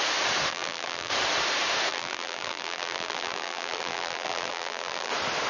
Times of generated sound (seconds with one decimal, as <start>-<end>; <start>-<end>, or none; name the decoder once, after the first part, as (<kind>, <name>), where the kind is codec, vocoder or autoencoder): 0.5-1.1 (vocoder, BigVGAN v2); 1.9-5.1